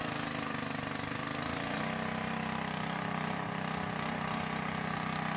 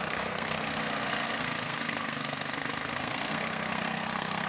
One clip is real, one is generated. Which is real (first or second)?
first